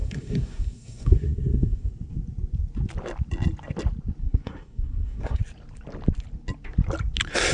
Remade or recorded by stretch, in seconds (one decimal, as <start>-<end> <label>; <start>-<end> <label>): 0.0-1.9 remade; 1.9-4.2 recorded; 4.2-5.4 remade; 5.4-7.5 recorded

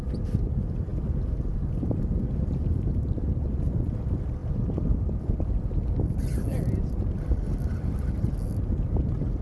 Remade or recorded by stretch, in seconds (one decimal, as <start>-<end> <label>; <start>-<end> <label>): 0.0-9.4 recorded